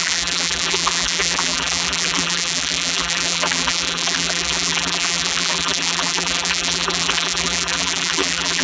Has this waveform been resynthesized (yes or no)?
yes